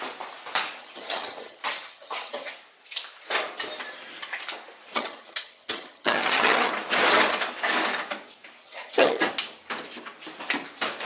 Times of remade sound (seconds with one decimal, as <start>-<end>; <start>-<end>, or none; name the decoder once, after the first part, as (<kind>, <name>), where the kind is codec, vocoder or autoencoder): 0.8-2.5 (vocoder, HiFi-GAN); 4.9-6.7; 8.6-9.2